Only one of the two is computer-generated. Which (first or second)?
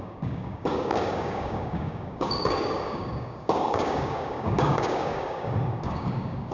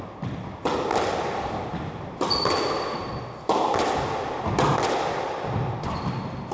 first